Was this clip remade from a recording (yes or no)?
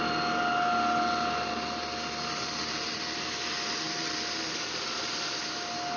no